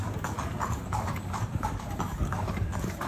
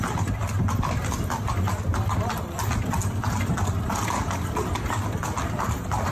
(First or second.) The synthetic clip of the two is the first